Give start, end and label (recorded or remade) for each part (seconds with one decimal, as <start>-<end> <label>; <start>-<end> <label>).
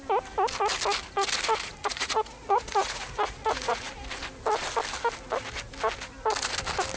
0.0-1.7 recorded; 1.7-3.9 remade; 3.9-7.0 recorded